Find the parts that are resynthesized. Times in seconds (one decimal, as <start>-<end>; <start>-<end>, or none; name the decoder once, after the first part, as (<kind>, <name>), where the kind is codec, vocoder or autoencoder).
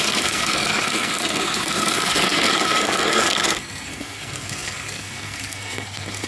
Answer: 0.0-6.3 (codec, SNAC)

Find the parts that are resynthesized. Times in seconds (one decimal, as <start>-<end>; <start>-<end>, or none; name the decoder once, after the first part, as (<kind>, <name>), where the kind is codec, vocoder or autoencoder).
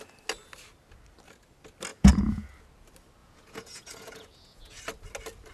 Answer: 1.9-2.5 (vocoder, Vocos); 3.2-4.8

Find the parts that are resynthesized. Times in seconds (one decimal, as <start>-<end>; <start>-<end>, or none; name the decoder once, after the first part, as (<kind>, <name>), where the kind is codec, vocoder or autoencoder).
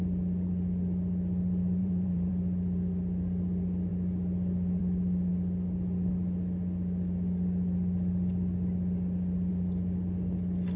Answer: 1.8-2.3 (vocoder, BigVGAN v2)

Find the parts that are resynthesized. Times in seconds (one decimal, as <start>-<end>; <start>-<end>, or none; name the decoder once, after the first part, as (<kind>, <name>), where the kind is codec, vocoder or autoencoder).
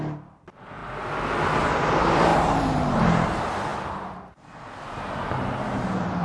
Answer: 2.3-3.0 (vocoder, BigVGAN v2)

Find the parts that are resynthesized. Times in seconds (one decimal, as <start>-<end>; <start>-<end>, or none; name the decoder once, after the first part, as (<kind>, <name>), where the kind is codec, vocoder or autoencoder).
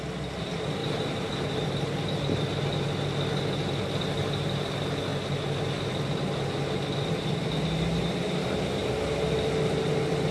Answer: none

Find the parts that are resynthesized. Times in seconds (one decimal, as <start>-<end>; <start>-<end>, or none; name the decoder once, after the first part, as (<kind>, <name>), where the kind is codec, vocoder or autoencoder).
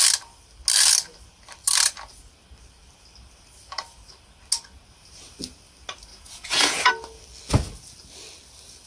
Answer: 6.1-6.9 (vocoder, Vocos)